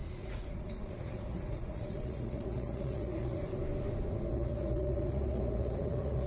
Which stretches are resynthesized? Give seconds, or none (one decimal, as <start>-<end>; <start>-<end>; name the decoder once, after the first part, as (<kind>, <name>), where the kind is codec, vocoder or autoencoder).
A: 0.0-3.4 (vocoder, Vocos); 4.3-6.3